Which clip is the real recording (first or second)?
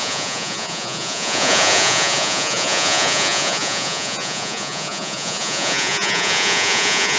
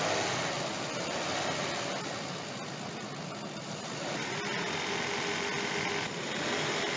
second